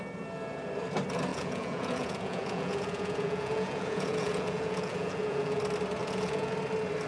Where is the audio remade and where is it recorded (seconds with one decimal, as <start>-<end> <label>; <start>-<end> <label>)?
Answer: 0.0-1.3 recorded; 1.3-5.6 remade; 5.6-6.0 recorded; 6.0-6.5 remade; 6.5-7.1 recorded